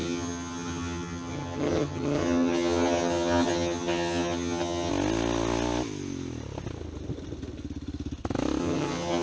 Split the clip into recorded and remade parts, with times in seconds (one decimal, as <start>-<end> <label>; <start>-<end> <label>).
0.0-4.9 remade; 4.9-8.6 recorded; 8.6-9.2 remade